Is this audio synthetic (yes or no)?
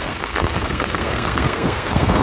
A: yes